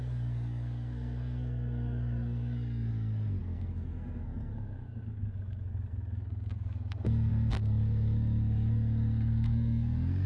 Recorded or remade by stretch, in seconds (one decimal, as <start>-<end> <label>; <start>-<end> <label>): 0.0-10.3 remade